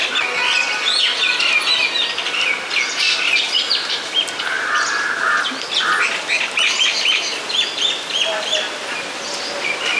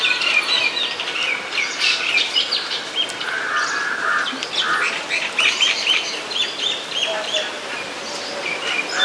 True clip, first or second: first